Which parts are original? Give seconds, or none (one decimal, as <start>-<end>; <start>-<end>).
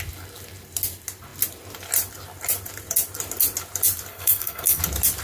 0.0-4.1; 4.8-5.2